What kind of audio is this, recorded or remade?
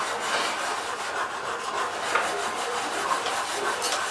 recorded